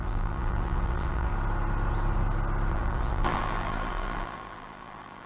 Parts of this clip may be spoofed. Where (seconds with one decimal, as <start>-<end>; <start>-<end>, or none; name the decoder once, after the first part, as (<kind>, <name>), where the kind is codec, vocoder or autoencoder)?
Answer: 0.0-1.3 (vocoder, BigVGAN v2); 2.7-5.3